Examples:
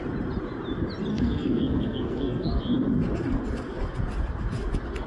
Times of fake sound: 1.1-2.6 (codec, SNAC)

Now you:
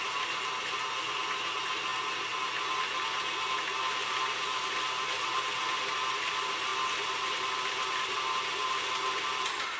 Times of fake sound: none

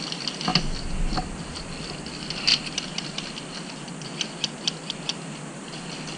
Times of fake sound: none

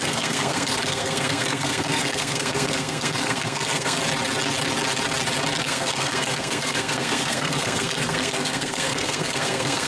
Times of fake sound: 0.0-4.0 (codec, SNAC); 5.6-9.9